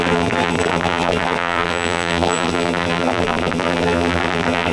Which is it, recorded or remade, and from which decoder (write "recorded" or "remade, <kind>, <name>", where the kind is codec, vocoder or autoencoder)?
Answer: remade, vocoder, BigVGAN v2